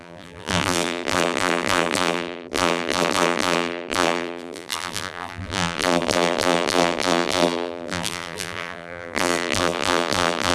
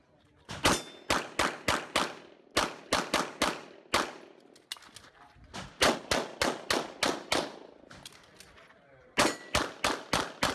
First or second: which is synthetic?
first